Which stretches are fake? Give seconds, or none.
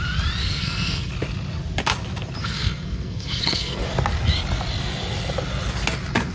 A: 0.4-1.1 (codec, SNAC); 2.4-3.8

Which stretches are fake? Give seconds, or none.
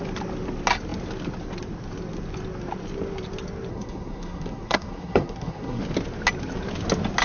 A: 3.7-5.8 (codec, SNAC)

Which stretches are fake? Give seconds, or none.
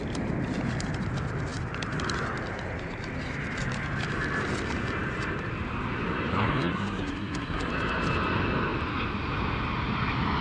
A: 6.3-7.7 (codec, SNAC)